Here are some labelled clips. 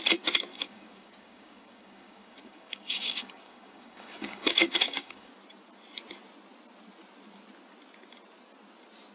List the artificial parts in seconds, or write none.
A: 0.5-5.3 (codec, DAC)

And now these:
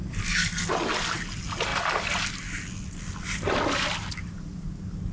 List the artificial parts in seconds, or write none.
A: 0.0-0.7 (codec, SNAC)

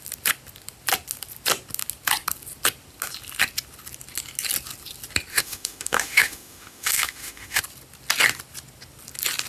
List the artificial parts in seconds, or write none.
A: 5.3-7.6 (autoencoder, DAC-VAE)

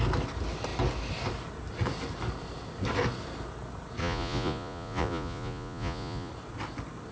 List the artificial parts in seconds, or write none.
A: 4.0-6.3 (vocoder, Vocos)

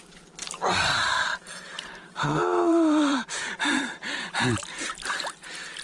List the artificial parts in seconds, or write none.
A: 1.3-4.8 (vocoder, BigVGAN v2)

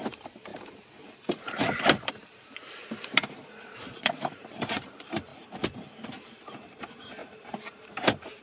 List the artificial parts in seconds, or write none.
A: 0.0-5.3 (vocoder, BigVGAN v2); 6.1-8.4

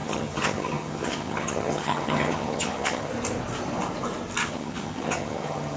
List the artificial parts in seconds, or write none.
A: 0.0-3.1 (vocoder, HiFi-GAN); 4.4-5.8